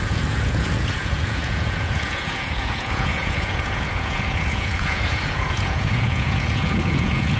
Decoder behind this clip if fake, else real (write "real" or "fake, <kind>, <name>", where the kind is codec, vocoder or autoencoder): fake, vocoder, Vocos